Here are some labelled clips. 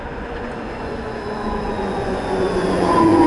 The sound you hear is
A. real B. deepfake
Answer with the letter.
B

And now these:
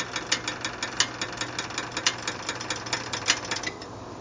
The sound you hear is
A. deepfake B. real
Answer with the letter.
B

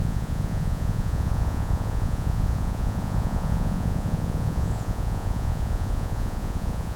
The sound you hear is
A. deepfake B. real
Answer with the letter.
A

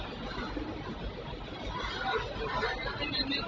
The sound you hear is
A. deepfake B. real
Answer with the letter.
B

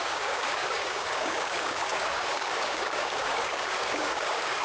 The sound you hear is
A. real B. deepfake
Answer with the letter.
B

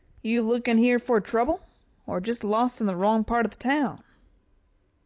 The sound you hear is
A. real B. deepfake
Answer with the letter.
B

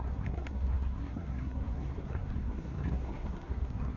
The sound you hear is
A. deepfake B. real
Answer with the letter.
A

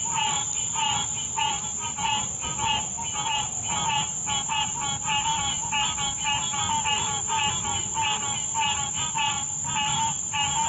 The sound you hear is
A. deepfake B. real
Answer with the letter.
A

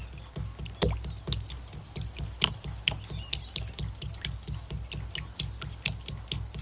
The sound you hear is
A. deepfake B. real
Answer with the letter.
B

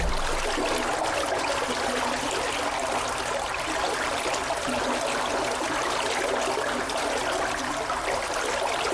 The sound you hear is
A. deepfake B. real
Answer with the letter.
B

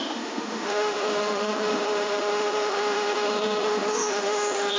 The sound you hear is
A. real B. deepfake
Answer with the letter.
B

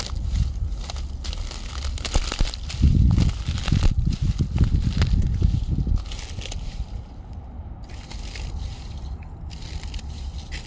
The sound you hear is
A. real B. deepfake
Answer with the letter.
A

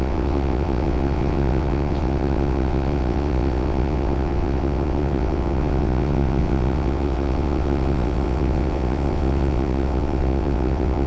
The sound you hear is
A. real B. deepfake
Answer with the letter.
B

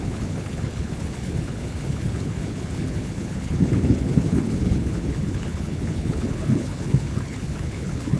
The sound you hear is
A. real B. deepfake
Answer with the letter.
B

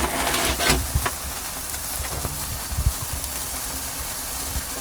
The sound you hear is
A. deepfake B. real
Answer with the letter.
B